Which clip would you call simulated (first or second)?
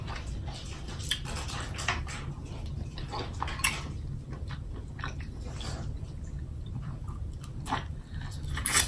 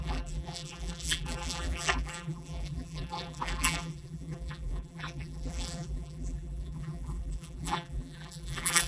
second